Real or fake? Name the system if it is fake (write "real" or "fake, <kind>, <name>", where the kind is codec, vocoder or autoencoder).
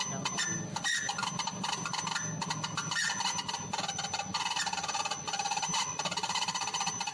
real